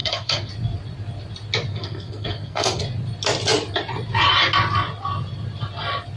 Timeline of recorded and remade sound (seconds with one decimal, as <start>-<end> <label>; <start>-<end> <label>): 0.0-0.5 remade; 0.5-1.7 recorded; 1.7-2.8 remade; 2.8-6.2 recorded